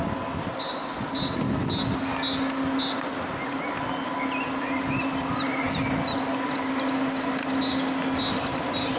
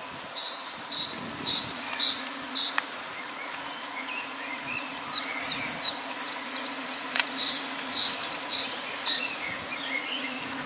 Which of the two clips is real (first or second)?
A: first